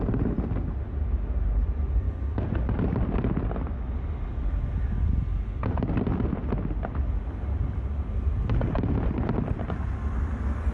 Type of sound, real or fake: real